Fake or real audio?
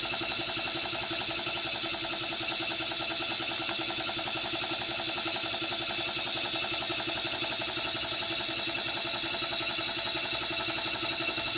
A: real